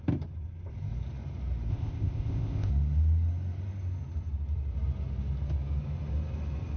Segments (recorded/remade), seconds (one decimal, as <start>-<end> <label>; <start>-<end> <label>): 0.0-1.7 recorded; 1.7-2.7 remade; 2.7-6.8 recorded